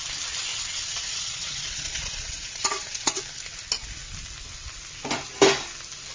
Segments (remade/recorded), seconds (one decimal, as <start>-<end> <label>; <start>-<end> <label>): 0.0-0.5 recorded; 0.5-3.2 remade; 3.2-6.1 recorded